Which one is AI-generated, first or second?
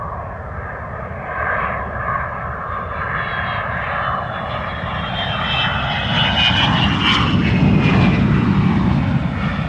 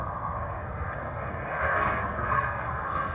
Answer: second